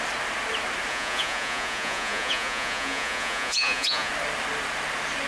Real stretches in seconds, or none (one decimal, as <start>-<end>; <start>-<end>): 0.0-0.9; 4.1-5.3